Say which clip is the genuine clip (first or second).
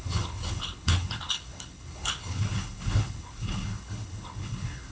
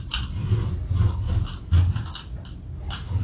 second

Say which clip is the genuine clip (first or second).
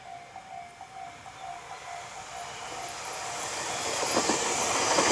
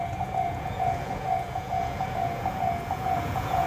first